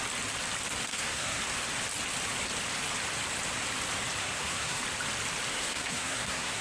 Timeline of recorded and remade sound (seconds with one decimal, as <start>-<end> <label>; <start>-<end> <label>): 0.0-0.9 recorded; 0.9-1.4 remade; 1.4-4.2 recorded; 4.2-4.8 remade; 4.8-5.5 recorded; 5.5-6.6 remade